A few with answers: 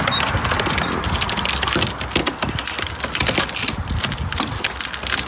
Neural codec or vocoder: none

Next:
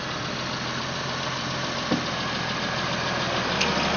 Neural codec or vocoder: none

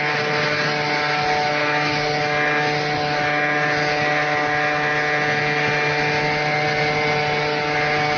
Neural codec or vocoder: none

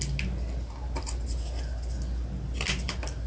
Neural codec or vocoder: none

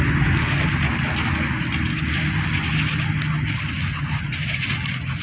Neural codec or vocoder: none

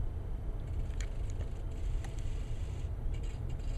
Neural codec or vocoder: vocoder, BigVGAN v2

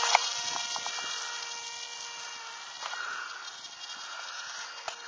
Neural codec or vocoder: none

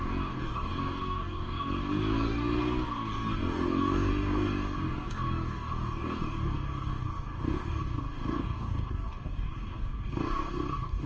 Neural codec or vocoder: codec, DAC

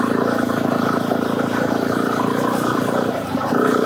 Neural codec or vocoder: vocoder, BigVGAN v2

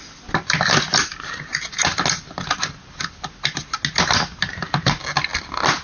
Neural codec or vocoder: none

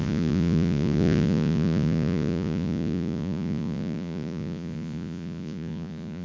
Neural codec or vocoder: vocoder, Vocos